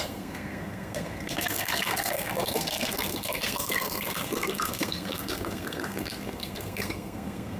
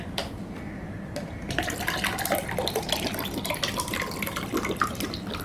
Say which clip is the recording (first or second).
second